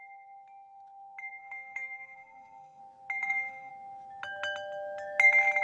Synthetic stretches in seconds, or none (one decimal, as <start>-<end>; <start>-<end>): 1.4-2.8; 3.2-3.7